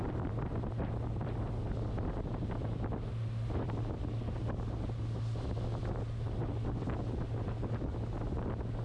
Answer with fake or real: real